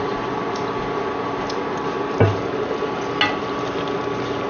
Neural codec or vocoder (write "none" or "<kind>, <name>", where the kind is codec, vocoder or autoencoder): none